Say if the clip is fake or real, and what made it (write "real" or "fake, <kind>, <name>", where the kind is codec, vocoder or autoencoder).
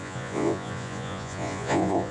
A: fake, vocoder, Vocos